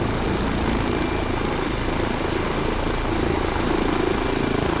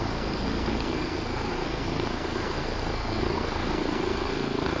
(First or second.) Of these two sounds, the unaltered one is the first